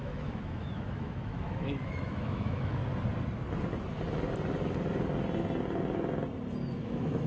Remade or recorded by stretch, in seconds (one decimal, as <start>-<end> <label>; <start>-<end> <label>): 0.0-2.8 remade; 2.8-6.8 recorded; 6.8-7.3 remade